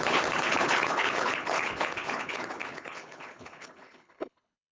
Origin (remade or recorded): remade